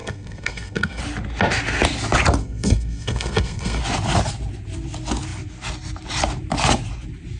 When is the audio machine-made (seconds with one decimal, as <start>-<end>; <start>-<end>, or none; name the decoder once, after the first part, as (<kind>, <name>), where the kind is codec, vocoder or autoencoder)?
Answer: 0.0-1.0 (codec, SNAC); 2.4-3.8